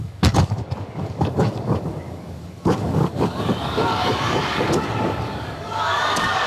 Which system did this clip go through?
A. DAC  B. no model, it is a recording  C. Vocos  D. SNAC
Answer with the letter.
A